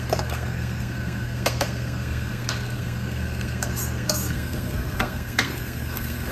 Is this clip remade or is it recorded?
remade